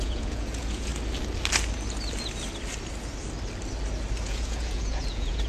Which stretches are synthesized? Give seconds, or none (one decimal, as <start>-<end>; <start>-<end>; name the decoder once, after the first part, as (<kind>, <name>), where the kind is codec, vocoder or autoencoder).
0.0-0.9 (vocoder, Vocos); 4.2-5.5